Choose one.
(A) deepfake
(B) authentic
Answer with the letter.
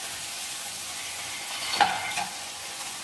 A